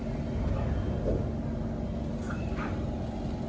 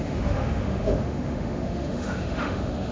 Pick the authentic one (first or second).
first